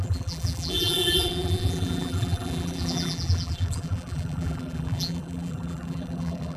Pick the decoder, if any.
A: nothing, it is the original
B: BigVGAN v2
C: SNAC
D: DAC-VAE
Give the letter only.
B